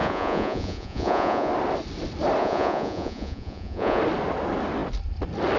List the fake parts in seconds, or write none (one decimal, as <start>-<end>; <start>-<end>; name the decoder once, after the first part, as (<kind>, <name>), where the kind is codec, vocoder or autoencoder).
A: 0.0-1.5 (vocoder, Vocos); 2.4-4.0

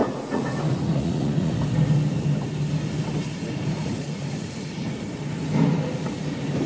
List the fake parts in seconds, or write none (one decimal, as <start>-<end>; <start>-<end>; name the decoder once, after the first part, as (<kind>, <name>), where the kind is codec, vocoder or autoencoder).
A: 0.0-1.6 (vocoder, Vocos); 3.4-5.0

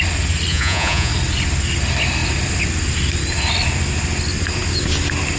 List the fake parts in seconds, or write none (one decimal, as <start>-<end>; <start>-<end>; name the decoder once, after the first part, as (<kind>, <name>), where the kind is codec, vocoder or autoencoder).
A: 0.5-1.1 (vocoder, Vocos)

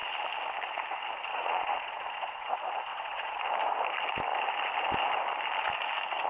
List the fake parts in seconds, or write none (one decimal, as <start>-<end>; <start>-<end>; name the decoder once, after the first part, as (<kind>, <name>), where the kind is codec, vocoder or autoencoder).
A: 1.3-2.5 (vocoder, Vocos); 2.9-3.4